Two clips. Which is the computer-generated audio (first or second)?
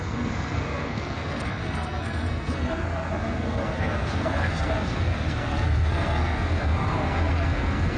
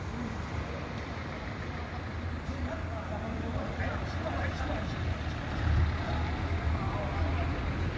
first